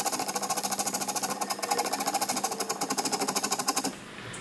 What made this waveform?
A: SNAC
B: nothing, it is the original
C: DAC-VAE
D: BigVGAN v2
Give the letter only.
B